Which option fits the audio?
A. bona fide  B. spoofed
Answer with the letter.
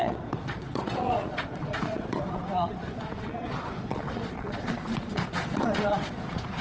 B